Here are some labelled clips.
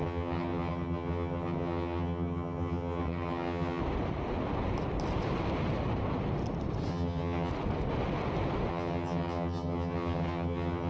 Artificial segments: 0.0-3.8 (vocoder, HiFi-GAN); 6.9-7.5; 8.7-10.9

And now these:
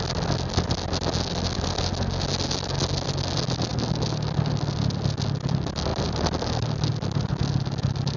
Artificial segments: none